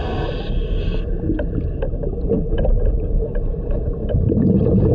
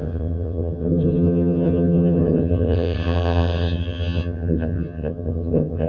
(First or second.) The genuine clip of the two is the first